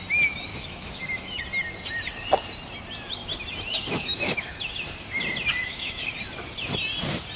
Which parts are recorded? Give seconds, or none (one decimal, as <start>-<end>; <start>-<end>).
0.0-0.5; 1.4-3.7; 4.6-5.6; 6.1-7.4